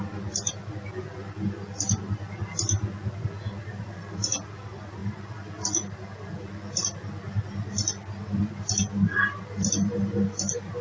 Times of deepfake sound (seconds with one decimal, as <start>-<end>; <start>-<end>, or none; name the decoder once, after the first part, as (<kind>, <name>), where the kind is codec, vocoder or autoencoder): none